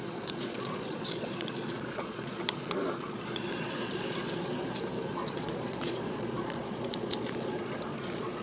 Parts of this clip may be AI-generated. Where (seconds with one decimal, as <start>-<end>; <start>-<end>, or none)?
0.0-4.5; 5.1-8.4